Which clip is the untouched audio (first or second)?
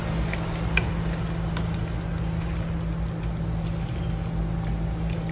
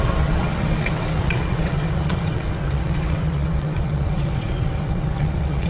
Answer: first